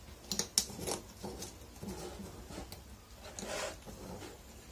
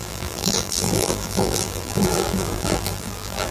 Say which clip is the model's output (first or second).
second